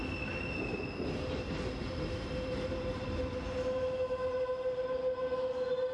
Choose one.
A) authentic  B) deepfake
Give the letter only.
A